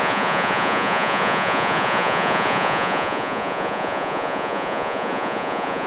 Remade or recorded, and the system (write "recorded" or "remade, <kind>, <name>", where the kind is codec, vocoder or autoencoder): remade, vocoder, Vocos